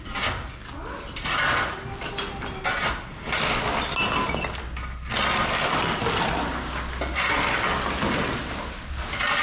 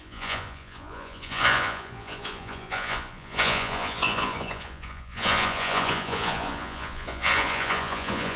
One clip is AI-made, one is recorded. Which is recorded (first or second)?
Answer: first